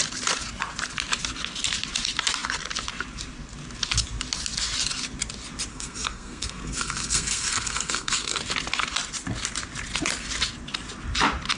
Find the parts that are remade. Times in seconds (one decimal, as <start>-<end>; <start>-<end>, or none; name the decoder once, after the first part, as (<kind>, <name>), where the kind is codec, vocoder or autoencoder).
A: 5.7-8.4 (codec, SNAC)